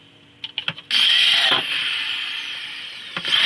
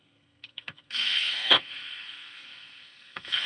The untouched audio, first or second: first